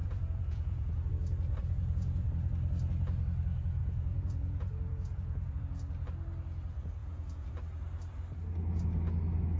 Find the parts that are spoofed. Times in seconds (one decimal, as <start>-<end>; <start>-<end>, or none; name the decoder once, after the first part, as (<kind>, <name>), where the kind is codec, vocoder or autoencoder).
0.0-1.1 (vocoder, Vocos); 1.6-2.3; 3.8-5.6; 7.0-7.5